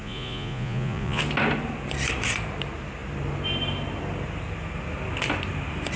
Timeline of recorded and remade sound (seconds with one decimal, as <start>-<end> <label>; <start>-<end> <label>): 0.0-1.2 remade; 1.2-6.0 recorded